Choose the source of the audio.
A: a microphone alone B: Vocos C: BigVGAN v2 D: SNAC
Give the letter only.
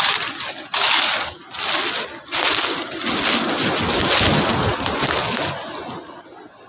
A